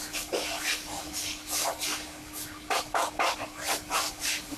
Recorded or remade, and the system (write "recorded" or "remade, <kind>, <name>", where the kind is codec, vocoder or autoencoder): remade, codec, DAC